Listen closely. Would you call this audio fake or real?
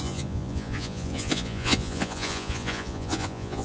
fake